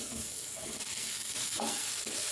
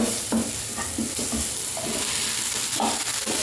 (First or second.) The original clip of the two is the second